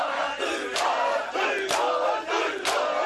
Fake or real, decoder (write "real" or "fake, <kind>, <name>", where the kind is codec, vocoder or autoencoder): real